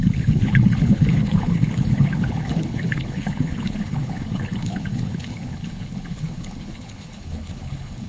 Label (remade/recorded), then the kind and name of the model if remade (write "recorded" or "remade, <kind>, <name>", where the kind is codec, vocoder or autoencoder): remade, codec, HILCodec